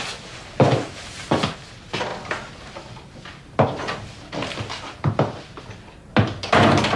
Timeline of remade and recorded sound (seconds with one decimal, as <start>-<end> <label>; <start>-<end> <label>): 0.0-7.0 recorded